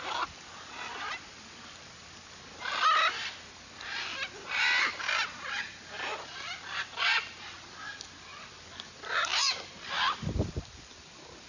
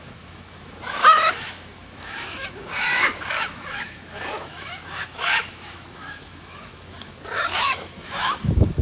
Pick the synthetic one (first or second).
second